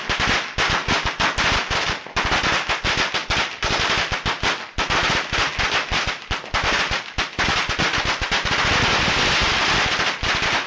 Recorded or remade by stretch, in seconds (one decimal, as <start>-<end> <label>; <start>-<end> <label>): 0.0-10.7 recorded